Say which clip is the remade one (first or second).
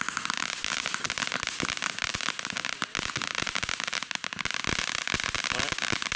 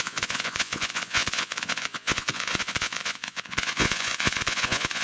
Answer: second